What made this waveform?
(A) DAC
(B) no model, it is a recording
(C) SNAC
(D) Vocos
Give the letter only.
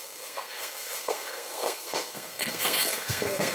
C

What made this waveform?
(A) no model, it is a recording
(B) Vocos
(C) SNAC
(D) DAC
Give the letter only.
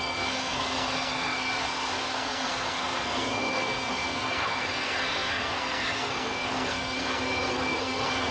C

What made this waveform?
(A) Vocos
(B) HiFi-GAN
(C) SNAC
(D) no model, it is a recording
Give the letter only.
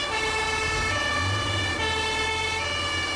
D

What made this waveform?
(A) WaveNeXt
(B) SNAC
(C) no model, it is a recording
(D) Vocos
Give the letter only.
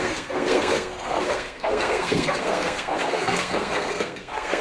B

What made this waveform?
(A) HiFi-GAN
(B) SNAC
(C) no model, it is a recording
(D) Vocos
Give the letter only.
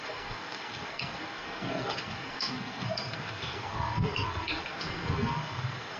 B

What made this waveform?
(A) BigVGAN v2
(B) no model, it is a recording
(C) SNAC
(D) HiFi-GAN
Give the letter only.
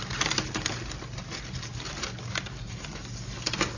B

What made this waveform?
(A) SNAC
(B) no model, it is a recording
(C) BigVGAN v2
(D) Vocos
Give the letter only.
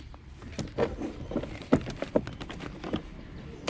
B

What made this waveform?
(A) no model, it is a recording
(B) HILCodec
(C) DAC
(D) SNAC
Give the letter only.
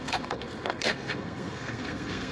D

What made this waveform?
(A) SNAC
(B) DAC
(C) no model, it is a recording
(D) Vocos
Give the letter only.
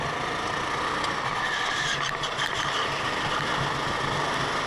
C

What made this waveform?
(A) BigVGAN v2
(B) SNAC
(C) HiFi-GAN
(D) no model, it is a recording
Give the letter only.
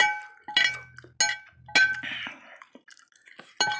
D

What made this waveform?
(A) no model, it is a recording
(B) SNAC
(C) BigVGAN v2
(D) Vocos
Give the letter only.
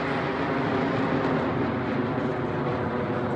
A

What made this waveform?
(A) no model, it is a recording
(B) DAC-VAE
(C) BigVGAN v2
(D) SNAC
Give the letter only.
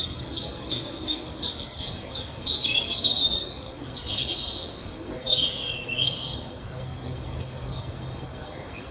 D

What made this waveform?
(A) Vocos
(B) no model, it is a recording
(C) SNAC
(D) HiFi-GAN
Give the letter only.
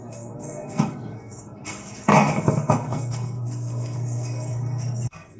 C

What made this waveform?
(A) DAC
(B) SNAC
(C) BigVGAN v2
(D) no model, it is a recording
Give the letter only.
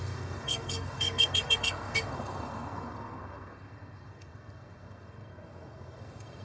B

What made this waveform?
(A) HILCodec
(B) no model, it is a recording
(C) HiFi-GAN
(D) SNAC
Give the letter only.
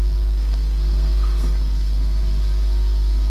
D